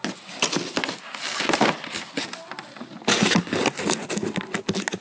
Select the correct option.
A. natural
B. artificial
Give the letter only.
A